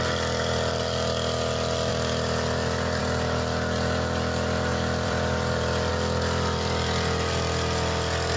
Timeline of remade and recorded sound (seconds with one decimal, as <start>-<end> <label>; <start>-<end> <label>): 0.0-4.7 recorded; 4.7-5.9 remade; 5.9-8.4 recorded